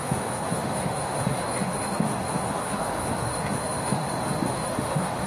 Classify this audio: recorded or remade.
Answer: remade